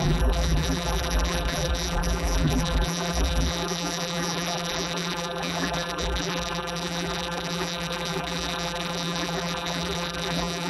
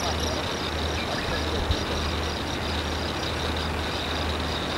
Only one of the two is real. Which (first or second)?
second